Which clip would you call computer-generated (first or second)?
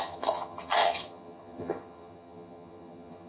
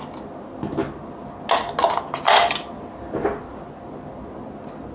first